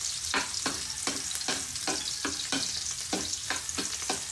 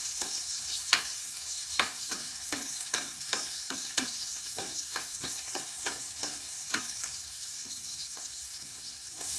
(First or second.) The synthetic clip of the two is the second